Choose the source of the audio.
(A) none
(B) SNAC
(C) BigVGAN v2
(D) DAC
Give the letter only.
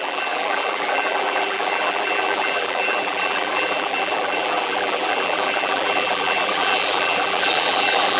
C